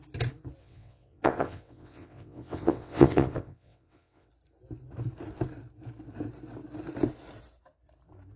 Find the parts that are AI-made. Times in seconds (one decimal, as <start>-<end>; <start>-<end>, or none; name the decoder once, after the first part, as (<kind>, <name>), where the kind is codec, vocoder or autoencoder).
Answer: 0.6-4.3 (vocoder, WaveNeXt)